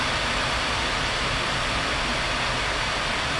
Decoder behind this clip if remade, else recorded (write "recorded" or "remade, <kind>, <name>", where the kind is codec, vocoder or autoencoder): recorded